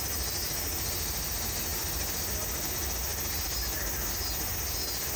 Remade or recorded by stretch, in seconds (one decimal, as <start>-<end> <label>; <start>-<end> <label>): 0.0-5.2 recorded